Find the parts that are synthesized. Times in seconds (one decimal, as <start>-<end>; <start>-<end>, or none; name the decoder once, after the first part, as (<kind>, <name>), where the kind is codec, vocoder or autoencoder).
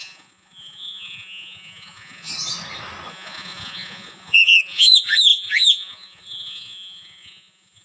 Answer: 0.0-2.3 (vocoder, Vocos); 3.1-7.8